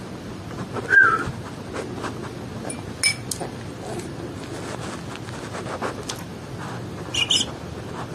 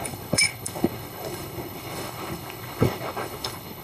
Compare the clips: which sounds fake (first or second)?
second